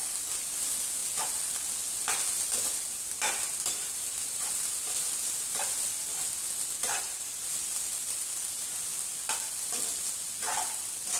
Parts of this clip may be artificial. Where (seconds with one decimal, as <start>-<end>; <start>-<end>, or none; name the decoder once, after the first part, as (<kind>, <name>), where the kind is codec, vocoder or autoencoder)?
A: 2.3-6.2 (vocoder, BigVGAN v2)